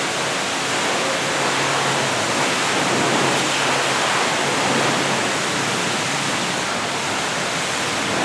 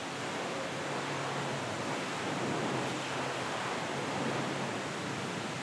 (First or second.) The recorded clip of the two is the first